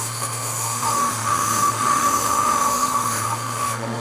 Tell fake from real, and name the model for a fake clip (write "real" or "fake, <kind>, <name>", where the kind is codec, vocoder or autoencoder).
fake, autoencoder, DAC-VAE